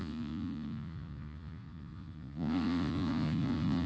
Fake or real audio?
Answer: fake